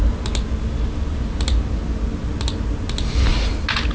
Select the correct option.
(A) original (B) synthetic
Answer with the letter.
A